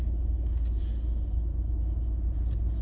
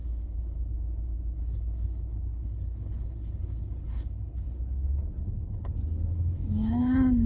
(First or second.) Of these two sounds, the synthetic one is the second